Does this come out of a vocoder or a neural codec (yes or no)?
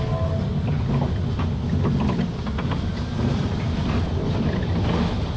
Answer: no